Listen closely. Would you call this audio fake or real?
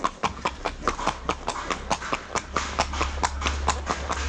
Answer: real